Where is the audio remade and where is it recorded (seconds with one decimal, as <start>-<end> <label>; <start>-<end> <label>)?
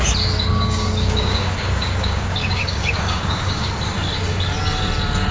0.0-0.5 recorded; 0.5-3.7 remade; 3.7-5.3 recorded